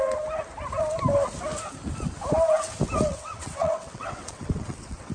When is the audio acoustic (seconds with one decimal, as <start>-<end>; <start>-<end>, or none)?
0.0-3.1